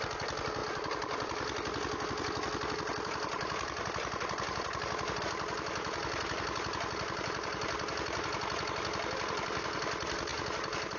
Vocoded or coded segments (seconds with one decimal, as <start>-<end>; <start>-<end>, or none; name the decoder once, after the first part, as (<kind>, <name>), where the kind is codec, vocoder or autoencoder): none